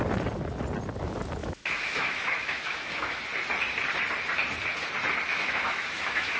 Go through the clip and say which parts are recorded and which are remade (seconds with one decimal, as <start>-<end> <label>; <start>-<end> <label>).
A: 0.0-1.4 recorded; 1.4-3.2 remade; 3.2-5.3 recorded; 5.3-6.4 remade

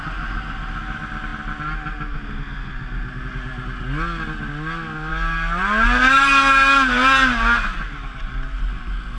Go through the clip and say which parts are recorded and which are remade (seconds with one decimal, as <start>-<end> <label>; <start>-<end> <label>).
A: 0.0-9.2 recorded